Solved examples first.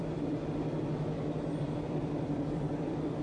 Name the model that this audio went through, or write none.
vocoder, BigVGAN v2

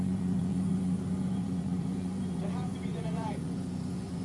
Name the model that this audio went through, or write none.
vocoder, Vocos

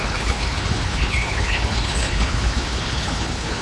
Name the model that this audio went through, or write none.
codec, HILCodec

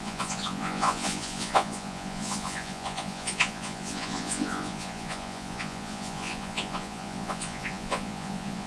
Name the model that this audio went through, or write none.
vocoder, Vocos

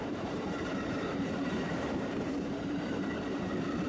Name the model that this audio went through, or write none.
vocoder, BigVGAN v2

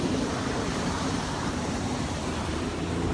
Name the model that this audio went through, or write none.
vocoder, BigVGAN v2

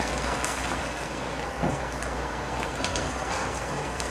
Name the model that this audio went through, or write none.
codec, SNAC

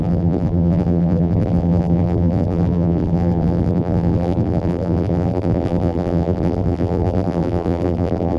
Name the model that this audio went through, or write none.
vocoder, BigVGAN v2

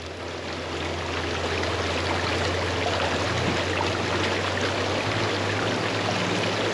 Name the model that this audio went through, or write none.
none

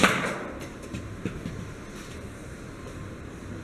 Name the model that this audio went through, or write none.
vocoder, BigVGAN v2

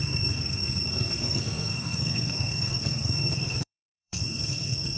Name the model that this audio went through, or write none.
codec, SNAC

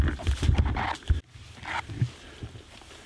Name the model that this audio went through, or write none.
none